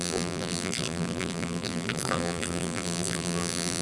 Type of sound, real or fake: fake